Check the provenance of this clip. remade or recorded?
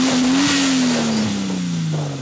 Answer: recorded